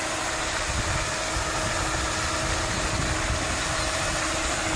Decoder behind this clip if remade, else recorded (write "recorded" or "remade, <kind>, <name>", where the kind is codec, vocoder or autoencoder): recorded